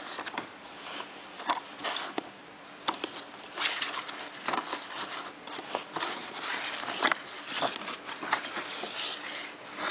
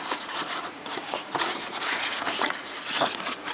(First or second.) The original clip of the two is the first